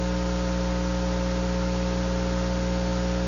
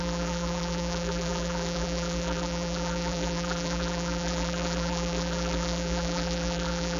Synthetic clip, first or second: second